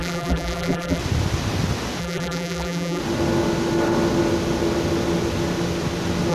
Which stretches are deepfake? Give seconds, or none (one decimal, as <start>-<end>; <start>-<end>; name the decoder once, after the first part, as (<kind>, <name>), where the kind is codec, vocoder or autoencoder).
0.0-1.0 (vocoder, BigVGAN v2); 2.0-3.0